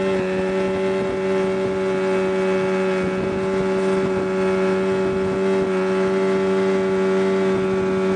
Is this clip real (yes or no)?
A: yes